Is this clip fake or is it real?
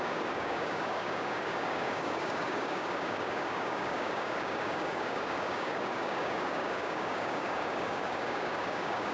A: fake